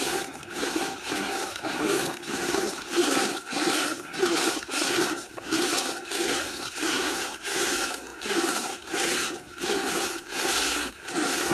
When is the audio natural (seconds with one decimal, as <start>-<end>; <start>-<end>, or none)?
none